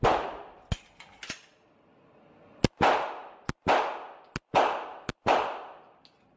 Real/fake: real